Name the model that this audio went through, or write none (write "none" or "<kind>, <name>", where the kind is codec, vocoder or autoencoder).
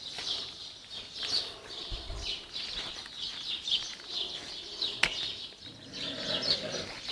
none